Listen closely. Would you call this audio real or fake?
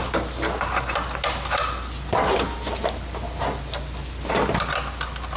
real